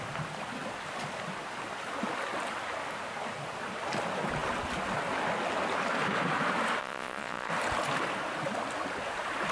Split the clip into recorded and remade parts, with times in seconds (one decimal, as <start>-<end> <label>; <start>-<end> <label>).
0.0-6.8 recorded; 6.8-7.5 remade; 7.5-9.5 recorded